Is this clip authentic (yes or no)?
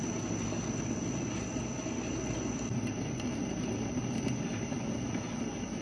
yes